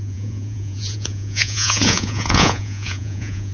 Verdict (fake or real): fake